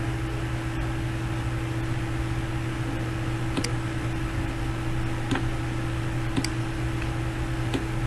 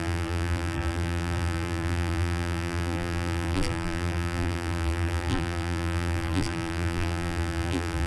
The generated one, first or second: second